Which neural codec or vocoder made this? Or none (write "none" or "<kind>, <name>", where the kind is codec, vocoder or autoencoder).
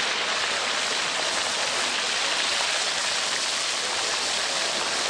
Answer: none